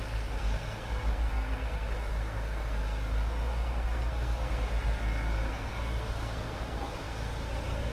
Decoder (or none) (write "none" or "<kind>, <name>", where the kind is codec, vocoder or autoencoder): codec, SNAC